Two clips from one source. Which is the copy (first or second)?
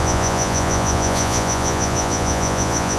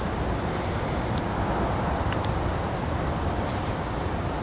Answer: first